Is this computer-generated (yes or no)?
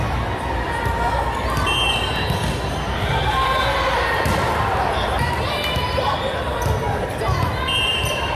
no